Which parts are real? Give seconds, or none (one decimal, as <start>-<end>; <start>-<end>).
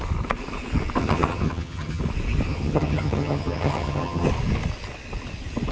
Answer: 0.0-1.0; 2.0-2.5; 4.3-5.7